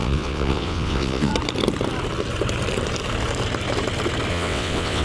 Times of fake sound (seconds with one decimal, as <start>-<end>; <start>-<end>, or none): 0.0-1.3; 4.3-5.0